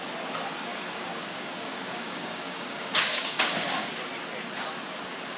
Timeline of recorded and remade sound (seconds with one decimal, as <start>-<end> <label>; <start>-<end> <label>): 0.0-0.7 recorded; 0.7-3.9 remade; 3.9-5.4 recorded